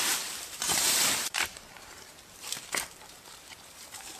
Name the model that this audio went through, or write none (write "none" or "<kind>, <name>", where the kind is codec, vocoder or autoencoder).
vocoder, BigVGAN v2